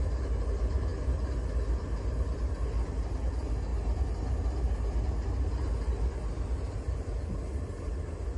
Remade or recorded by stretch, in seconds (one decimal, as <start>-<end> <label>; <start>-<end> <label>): 0.0-8.4 recorded